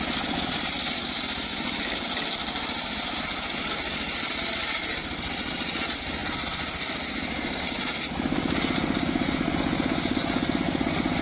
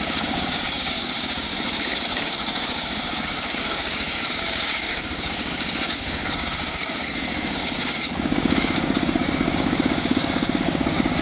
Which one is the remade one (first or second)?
second